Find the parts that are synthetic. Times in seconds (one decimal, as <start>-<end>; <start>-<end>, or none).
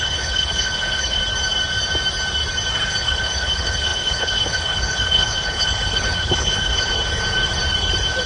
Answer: 0.0-1.2; 3.0-6.9